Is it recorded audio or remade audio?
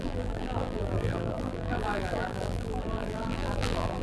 remade